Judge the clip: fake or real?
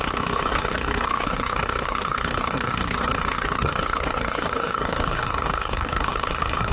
fake